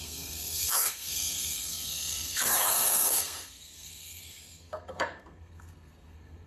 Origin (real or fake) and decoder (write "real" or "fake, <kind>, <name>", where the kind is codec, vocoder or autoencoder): fake, codec, SNAC